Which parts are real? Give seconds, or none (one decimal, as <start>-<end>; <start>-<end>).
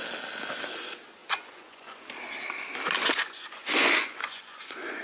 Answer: 0.0-1.2; 2.0-3.1